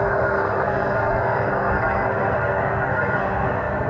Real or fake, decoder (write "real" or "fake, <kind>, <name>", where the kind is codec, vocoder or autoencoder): fake, codec, SNAC